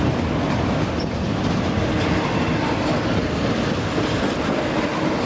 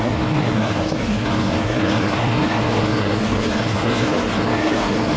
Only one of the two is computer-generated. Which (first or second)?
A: second